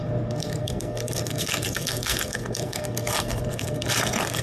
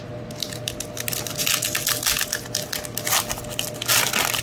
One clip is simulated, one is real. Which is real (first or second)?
second